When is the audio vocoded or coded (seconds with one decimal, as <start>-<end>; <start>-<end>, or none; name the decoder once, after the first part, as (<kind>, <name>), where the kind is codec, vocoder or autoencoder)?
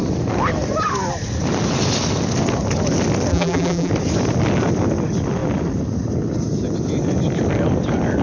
3.3-3.9 (vocoder, BigVGAN v2)